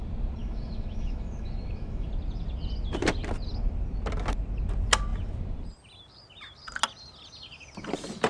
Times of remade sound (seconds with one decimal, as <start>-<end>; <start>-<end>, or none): 0.4-2.1